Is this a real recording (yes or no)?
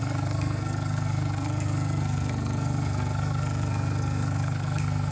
no